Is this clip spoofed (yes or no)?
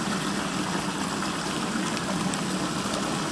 no